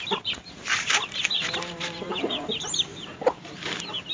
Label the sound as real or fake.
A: fake